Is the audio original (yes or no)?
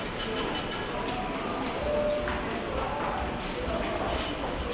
yes